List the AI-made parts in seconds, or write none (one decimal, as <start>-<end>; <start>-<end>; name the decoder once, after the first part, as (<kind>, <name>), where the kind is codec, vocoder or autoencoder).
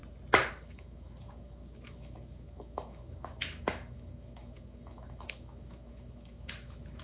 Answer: 0.5-7.0 (autoencoder, DAC-VAE)